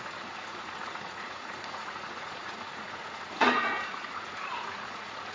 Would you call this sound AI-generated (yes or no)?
yes